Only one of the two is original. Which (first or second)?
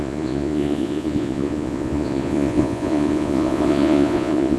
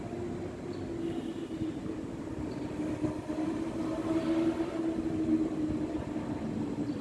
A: second